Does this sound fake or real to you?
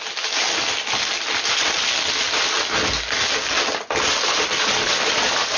real